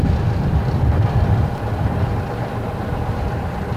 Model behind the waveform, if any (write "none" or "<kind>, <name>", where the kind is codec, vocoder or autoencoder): none